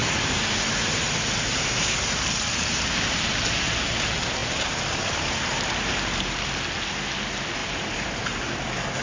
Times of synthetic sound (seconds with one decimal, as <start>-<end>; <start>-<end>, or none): 0.0-3.4; 4.4-6.6; 7.6-8.4